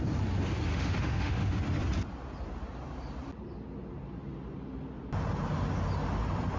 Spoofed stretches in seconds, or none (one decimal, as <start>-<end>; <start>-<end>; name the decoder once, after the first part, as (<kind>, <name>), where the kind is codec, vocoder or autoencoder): 0.7-1.6 (autoencoder, DAC-VAE)